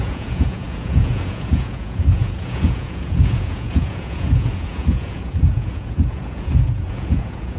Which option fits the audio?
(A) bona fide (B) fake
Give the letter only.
B